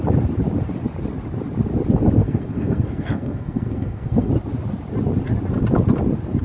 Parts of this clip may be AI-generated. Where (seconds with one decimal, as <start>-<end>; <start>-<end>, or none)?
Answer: 2.2-4.3

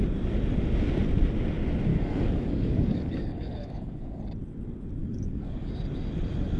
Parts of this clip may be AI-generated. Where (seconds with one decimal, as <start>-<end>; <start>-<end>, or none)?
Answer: 1.9-4.2; 5.0-5.7

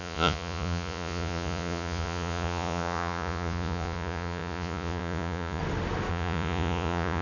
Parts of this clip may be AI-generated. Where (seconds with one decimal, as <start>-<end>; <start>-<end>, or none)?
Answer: 0.0-5.6; 6.1-7.2

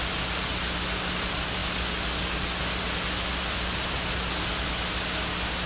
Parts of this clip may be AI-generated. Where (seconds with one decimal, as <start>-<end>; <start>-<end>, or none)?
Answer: none